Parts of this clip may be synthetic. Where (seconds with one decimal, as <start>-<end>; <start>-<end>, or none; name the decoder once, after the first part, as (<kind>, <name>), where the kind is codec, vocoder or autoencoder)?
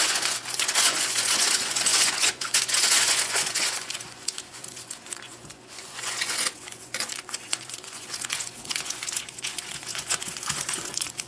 0.0-11.3 (vocoder, Vocos)